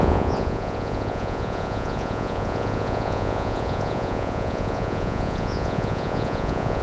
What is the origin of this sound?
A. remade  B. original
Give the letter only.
A